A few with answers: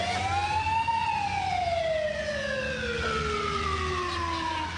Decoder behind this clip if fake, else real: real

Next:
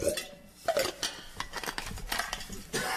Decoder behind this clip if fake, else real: real